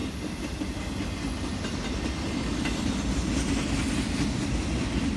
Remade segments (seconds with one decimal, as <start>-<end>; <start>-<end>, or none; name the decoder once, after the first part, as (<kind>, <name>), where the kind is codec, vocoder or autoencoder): none